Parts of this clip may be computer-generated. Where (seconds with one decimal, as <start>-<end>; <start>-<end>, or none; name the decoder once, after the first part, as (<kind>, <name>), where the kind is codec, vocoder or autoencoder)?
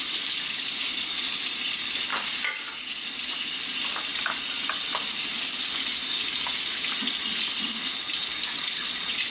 8.5-9.3 (vocoder, Vocos)